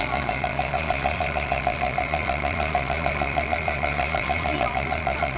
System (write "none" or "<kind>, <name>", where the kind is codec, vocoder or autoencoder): vocoder, Vocos